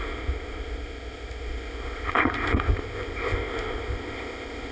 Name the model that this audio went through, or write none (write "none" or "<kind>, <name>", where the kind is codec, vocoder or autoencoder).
codec, ZipCodec